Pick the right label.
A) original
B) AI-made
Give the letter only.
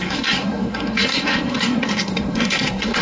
B